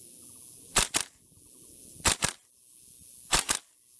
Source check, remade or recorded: recorded